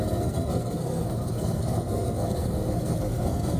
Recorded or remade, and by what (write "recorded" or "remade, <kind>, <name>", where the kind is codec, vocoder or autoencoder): remade, codec, SNAC